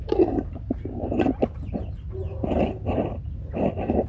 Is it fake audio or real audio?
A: real